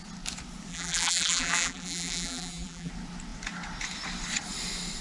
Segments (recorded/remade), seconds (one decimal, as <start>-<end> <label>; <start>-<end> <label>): 0.0-0.7 recorded; 0.7-2.9 remade; 2.9-5.0 recorded